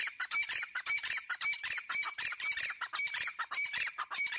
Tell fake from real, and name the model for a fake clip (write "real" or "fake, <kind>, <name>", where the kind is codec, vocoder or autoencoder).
fake, vocoder, BigVGAN v2